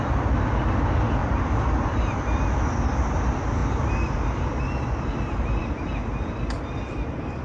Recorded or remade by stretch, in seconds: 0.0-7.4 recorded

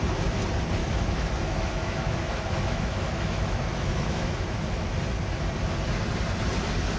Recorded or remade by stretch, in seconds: 0.0-0.8 recorded; 0.8-4.9 remade; 4.9-7.0 recorded